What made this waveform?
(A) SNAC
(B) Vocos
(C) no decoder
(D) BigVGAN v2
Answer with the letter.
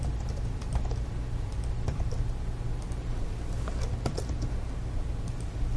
C